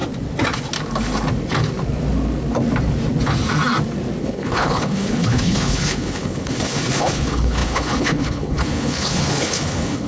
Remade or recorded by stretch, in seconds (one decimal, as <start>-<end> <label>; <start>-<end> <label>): 0.0-4.2 recorded; 4.2-10.1 remade